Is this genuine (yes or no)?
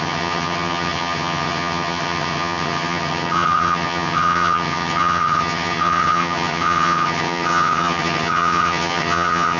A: no